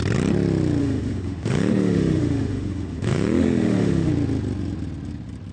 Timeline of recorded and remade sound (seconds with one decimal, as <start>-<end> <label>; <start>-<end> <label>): 0.0-0.8 recorded; 0.8-4.1 remade; 4.1-5.5 recorded